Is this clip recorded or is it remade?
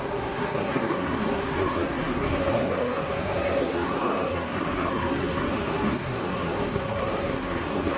remade